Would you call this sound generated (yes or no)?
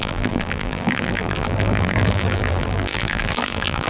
yes